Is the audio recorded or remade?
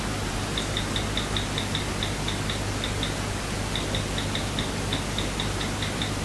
recorded